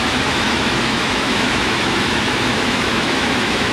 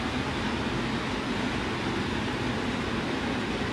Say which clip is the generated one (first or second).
first